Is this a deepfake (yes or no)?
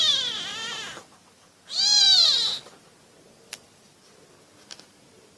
no